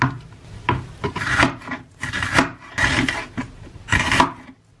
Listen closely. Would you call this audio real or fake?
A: real